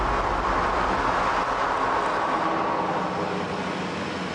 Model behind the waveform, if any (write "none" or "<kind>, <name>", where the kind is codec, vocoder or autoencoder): none